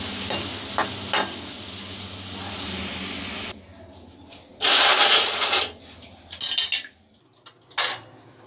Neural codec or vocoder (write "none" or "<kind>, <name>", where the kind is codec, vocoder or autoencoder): none